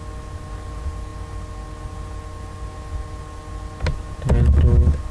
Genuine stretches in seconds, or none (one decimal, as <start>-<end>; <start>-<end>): 0.0-5.1